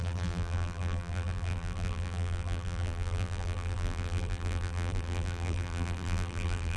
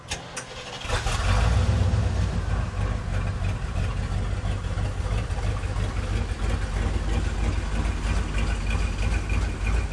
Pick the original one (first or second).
second